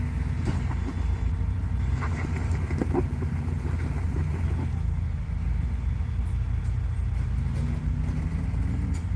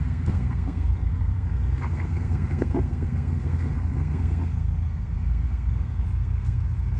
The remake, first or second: second